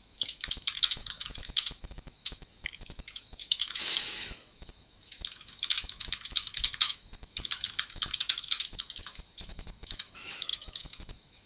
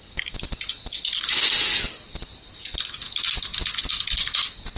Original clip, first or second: second